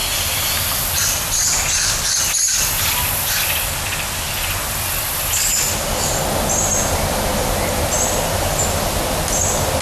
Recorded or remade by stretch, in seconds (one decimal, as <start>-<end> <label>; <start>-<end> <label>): 0.0-2.1 remade; 2.1-5.5 recorded; 5.5-9.4 remade; 9.4-9.8 recorded